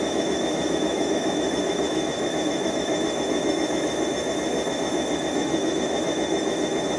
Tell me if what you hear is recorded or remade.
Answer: remade